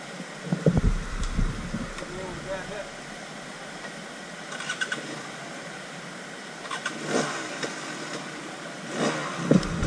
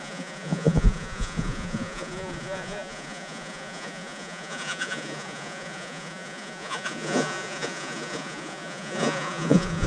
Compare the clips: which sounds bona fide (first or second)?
first